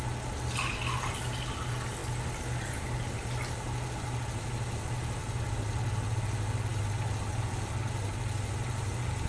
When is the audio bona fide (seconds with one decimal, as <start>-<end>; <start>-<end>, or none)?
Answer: 0.0-9.3